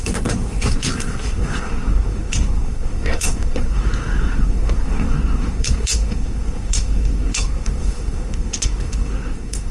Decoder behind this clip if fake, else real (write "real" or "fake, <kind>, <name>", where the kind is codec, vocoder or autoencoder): fake, codec, SNAC